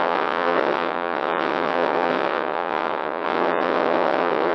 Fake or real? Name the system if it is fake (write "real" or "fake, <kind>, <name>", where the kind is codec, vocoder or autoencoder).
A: fake, vocoder, WaveNeXt